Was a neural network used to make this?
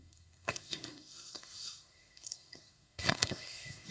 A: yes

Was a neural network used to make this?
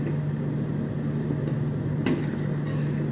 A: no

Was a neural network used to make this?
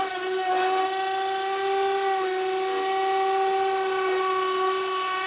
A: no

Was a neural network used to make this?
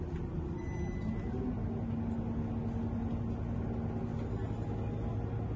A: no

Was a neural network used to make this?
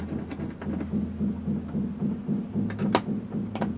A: no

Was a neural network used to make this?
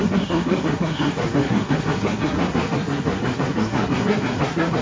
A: yes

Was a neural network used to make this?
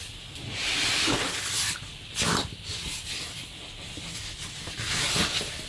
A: no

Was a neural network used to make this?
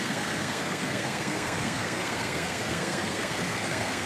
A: yes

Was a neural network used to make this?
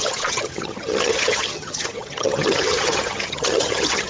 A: yes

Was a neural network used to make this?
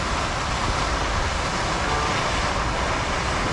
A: no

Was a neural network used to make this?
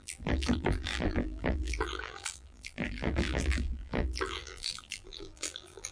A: yes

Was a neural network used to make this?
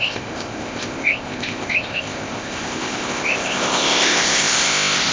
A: yes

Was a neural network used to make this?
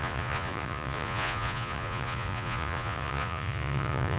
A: yes